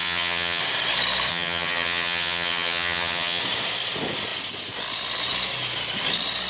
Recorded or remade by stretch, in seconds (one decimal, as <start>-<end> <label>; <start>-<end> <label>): 0.0-0.6 remade; 0.6-1.3 recorded; 1.3-3.4 remade; 3.4-6.5 recorded